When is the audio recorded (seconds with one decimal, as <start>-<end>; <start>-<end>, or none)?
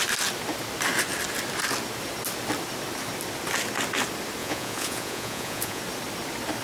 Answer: 0.0-4.4; 5.8-6.6